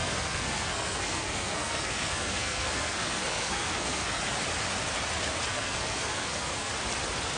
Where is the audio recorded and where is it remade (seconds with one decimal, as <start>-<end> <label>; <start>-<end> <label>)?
0.0-4.2 remade; 4.2-5.5 recorded; 5.5-6.7 remade; 6.7-7.4 recorded